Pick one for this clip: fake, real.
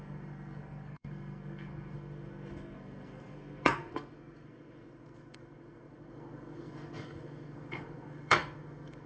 fake